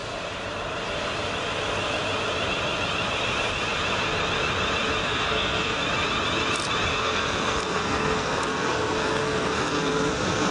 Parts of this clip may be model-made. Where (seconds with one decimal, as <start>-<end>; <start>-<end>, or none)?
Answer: 5.0-5.8; 6.9-10.5